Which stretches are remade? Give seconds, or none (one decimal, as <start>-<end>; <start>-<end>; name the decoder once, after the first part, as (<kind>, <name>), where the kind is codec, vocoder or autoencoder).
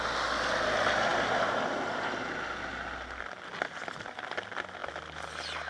none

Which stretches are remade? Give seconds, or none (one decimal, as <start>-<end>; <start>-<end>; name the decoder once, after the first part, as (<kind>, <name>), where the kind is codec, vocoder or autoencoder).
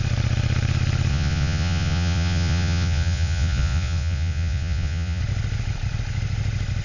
1.1-5.2 (vocoder, Vocos)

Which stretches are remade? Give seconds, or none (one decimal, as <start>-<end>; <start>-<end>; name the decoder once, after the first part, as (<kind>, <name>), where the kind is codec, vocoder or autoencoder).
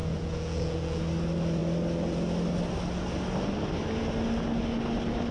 0.0-1.0 (vocoder, Vocos)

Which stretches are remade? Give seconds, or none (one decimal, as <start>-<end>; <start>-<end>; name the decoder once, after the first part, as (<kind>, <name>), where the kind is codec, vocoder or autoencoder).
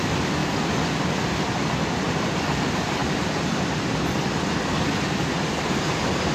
none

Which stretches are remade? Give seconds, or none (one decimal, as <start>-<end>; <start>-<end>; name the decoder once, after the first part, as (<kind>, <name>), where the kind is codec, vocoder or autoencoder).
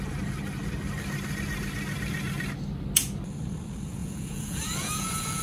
4.0-5.4 (vocoder, Vocos)